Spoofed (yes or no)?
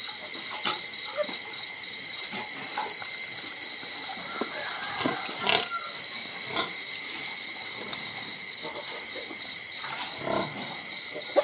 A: no